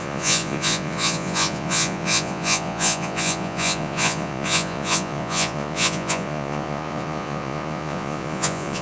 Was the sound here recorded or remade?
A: remade